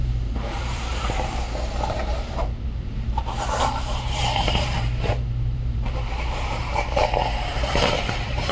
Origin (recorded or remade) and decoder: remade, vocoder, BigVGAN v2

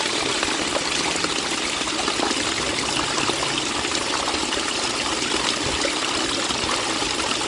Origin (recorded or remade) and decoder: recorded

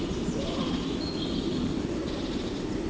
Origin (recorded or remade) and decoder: remade, vocoder, BigVGAN v2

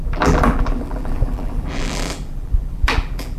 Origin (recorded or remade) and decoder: remade, vocoder, BigVGAN v2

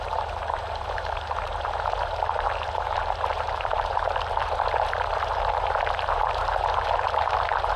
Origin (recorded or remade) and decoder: remade, vocoder, BigVGAN v2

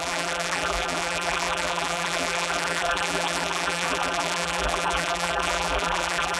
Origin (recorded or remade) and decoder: remade, vocoder, BigVGAN v2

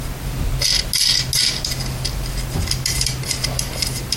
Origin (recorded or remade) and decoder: recorded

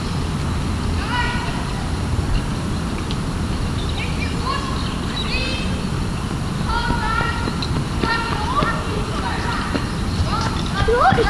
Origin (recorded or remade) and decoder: recorded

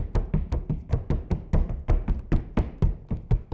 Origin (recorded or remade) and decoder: recorded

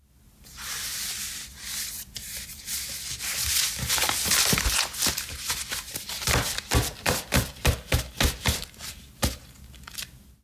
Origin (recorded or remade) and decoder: recorded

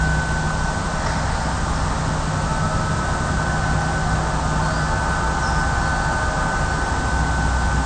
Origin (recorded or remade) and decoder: recorded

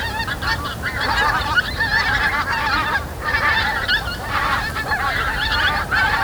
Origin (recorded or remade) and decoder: remade, vocoder, BigVGAN v2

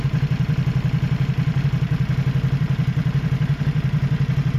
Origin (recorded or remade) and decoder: recorded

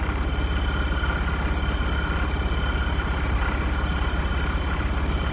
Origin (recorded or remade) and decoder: recorded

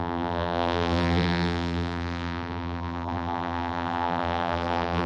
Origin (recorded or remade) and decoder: remade, vocoder, BigVGAN v2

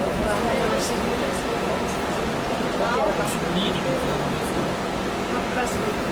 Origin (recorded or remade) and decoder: recorded